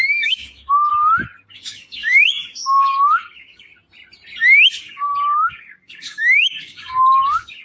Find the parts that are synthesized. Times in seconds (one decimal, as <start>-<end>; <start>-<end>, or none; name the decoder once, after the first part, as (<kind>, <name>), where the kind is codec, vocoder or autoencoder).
0.0-0.9 (codec, DAC); 1.5-3.7; 4.8-7.6